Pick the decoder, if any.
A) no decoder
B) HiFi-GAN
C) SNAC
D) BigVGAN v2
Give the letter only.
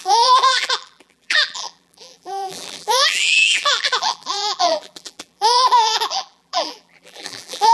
D